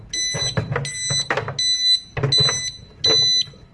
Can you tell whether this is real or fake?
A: real